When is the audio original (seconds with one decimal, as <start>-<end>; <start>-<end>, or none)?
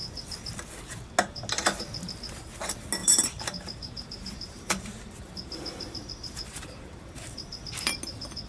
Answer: 0.0-3.0; 7.9-8.5